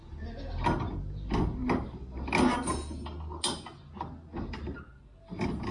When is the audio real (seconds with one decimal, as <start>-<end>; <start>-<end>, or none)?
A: 0.0-5.7